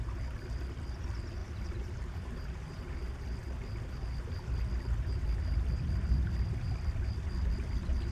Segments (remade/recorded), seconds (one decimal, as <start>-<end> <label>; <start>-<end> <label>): 0.0-1.4 recorded; 1.4-2.9 remade; 2.9-8.1 recorded